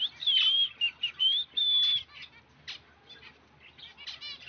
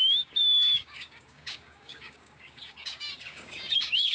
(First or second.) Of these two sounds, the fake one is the second